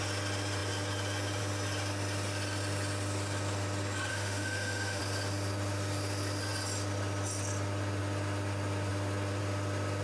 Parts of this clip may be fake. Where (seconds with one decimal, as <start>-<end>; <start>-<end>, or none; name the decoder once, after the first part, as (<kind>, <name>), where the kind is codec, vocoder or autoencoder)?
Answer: 4.1-5.0 (autoencoder, DAC-VAE)